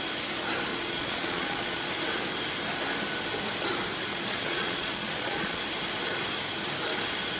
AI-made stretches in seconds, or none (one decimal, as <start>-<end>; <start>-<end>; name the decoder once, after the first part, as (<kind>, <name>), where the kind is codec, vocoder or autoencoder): 0.7-1.9 (vocoder, Vocos); 4.1-5.6